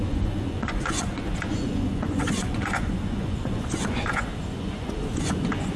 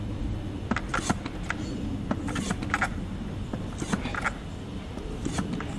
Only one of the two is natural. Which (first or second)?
second